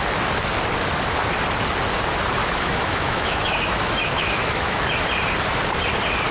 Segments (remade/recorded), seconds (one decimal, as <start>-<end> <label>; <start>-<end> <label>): 0.0-2.4 recorded; 2.4-4.8 remade; 4.8-6.3 recorded